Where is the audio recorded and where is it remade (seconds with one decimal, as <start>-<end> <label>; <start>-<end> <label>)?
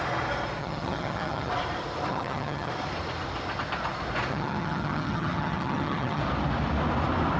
0.0-0.6 recorded; 0.6-1.5 remade; 1.5-2.1 recorded; 2.1-2.7 remade; 2.7-4.3 recorded; 4.3-6.2 remade; 6.2-7.4 recorded